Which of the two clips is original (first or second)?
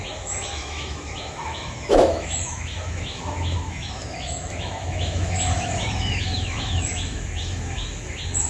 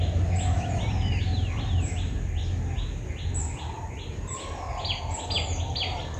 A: second